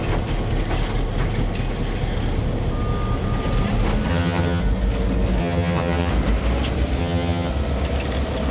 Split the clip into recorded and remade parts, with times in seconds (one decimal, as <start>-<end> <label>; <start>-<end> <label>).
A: 0.0-4.1 recorded; 4.1-4.6 remade; 4.6-5.4 recorded; 5.4-6.1 remade; 6.1-7.0 recorded; 7.0-7.5 remade; 7.5-8.5 recorded